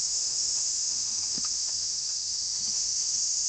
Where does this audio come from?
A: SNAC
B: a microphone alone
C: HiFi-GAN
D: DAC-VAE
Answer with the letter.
D